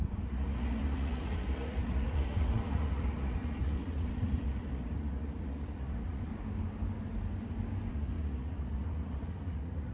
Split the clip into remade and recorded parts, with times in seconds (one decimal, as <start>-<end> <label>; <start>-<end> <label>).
0.0-6.3 remade; 6.3-7.9 recorded; 7.9-9.9 remade